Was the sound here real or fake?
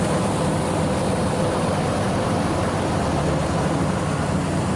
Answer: real